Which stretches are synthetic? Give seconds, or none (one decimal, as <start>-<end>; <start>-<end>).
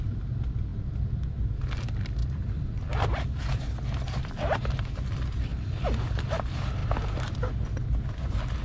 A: 0.7-1.8; 2.2-3.6; 5.5-6.1